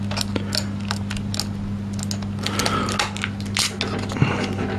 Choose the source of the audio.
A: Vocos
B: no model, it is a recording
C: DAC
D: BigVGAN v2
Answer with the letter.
B